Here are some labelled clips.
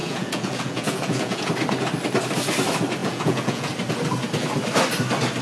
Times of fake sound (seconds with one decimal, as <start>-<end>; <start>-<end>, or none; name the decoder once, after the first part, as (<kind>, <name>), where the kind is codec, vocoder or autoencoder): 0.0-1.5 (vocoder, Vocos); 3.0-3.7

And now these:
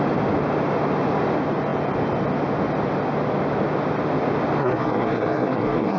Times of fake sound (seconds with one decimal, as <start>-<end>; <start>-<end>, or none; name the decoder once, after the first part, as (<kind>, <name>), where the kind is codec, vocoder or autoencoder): 4.6-6.0 (codec, SNAC)

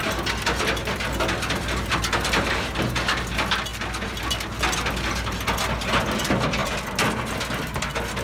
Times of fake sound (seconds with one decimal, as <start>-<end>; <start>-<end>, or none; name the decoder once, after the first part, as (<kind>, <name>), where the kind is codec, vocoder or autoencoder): none

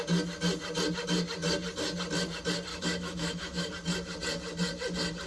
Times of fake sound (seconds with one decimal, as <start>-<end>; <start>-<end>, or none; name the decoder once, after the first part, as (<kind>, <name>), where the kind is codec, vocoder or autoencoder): 2.7-3.7 (autoencoder, DAC-VAE)

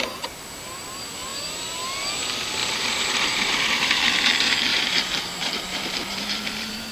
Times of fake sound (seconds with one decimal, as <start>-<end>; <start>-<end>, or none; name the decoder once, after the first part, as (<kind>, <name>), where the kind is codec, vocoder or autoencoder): 2.6-3.9 (vocoder, BigVGAN v2); 4.7-6.9